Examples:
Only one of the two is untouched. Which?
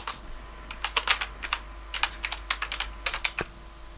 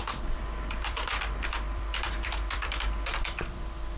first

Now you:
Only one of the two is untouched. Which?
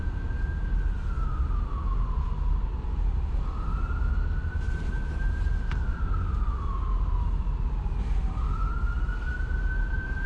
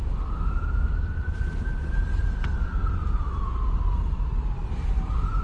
first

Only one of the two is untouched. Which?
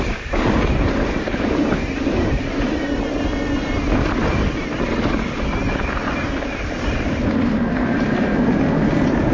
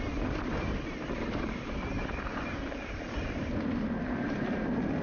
first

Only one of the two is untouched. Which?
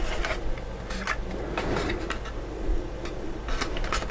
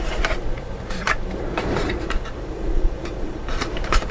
first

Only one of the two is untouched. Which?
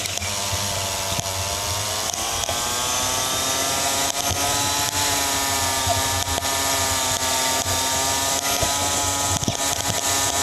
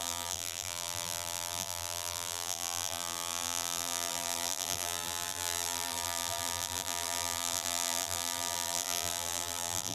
first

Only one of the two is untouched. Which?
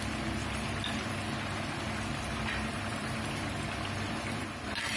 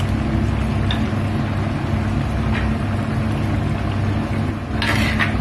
second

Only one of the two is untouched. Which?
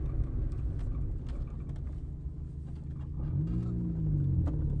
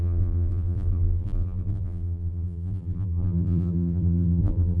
first